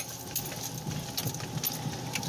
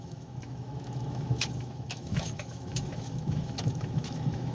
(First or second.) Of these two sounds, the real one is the first